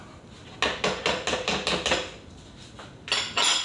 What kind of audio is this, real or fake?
real